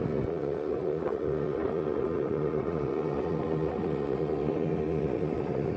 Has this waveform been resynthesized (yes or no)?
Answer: yes